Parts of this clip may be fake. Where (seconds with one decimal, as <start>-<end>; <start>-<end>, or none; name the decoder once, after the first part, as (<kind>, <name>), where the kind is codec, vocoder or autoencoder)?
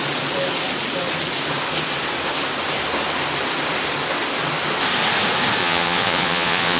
5.6-6.8 (vocoder, Vocos)